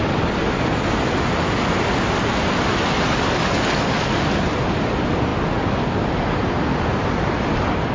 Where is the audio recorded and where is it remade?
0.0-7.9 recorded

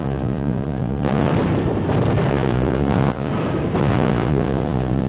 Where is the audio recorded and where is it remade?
0.0-1.3 remade; 1.3-2.3 recorded; 2.3-3.3 remade; 3.3-3.8 recorded; 3.8-5.1 remade

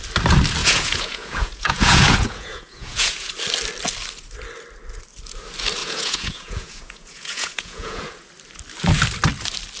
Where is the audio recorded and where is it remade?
0.0-0.6 recorded; 0.6-3.3 remade; 3.3-5.8 recorded; 5.8-8.3 remade; 8.3-9.8 recorded